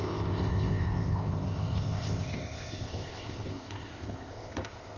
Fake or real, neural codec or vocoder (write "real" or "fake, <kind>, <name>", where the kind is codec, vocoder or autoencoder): fake, codec, ZipCodec